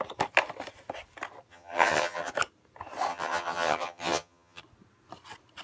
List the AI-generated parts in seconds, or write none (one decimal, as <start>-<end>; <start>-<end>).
1.5-2.3; 3.1-4.6